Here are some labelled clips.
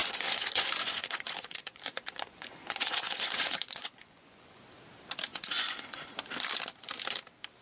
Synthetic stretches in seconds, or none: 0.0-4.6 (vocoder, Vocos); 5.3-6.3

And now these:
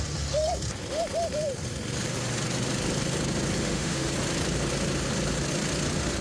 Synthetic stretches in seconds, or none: 3.6-4.1 (autoencoder, DAC-VAE)